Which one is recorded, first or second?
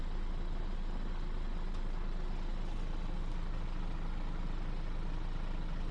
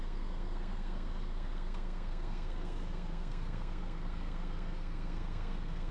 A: first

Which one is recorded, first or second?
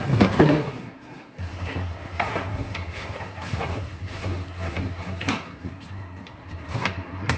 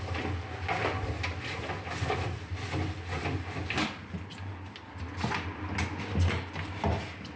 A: second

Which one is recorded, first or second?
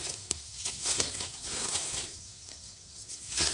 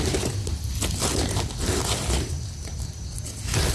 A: second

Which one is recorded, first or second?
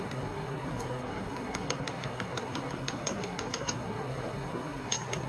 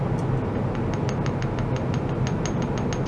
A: second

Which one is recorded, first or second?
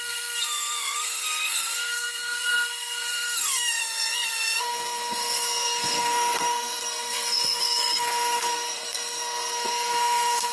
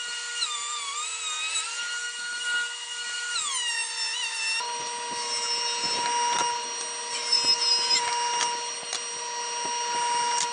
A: second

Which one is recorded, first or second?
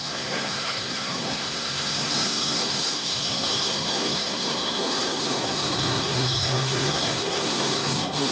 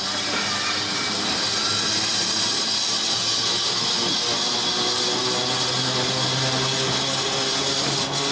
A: second